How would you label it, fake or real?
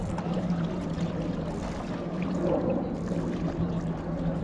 real